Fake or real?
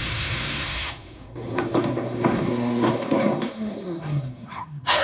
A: fake